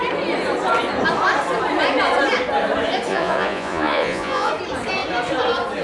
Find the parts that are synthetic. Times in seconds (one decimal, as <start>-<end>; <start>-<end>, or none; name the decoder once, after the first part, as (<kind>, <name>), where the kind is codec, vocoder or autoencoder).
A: 3.1-4.5 (vocoder, Vocos)